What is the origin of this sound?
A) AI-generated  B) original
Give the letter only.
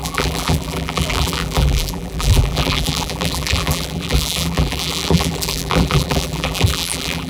A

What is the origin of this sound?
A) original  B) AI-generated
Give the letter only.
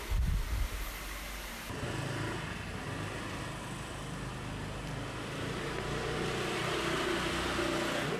A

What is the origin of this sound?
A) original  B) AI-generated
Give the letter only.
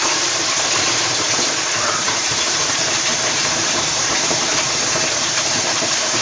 B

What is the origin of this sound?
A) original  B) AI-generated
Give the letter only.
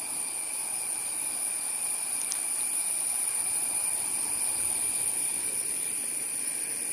B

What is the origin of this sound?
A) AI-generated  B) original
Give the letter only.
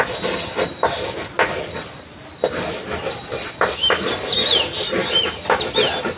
B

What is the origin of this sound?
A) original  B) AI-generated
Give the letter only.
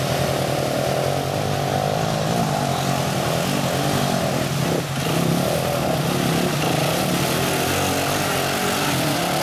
A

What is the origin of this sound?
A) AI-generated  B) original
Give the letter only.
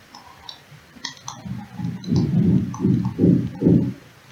A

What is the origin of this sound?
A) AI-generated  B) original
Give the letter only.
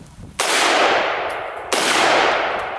A